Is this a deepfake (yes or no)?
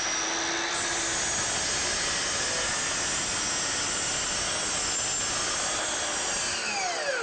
no